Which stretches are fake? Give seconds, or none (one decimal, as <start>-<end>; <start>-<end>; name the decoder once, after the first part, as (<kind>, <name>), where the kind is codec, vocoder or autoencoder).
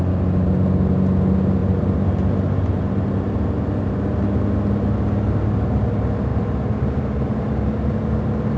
none